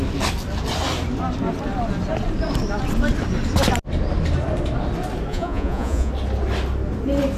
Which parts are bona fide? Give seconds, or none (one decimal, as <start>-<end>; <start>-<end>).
0.0-5.3; 6.1-7.4